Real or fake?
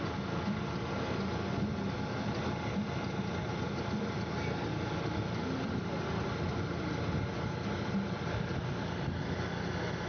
real